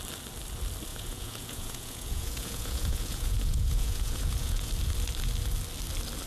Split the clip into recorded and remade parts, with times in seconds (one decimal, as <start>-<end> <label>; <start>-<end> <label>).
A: 0.0-0.9 recorded; 0.9-4.7 remade; 4.7-6.3 recorded